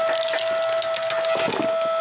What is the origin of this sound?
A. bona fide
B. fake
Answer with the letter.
A